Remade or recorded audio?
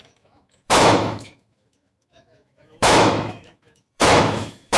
remade